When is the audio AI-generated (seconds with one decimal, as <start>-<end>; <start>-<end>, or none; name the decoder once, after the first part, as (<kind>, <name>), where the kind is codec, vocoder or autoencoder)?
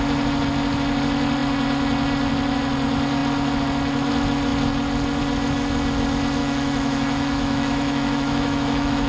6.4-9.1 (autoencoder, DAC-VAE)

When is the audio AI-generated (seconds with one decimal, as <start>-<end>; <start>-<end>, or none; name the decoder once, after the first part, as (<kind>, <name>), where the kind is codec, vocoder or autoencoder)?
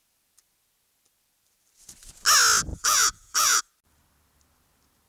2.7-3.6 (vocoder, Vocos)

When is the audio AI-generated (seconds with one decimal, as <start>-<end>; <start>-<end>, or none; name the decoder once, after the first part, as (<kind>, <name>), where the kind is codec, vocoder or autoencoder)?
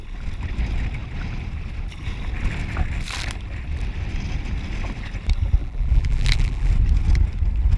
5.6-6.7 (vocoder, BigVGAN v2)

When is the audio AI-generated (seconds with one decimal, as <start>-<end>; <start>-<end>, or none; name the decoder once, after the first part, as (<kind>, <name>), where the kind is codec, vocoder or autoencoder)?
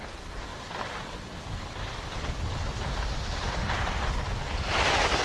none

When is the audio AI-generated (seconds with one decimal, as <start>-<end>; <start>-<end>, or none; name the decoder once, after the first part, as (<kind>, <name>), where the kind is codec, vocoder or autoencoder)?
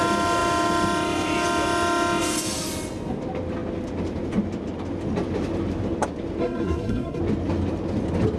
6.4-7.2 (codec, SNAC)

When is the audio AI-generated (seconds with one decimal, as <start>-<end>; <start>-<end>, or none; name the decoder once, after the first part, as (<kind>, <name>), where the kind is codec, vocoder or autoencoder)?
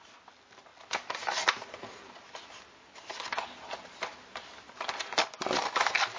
none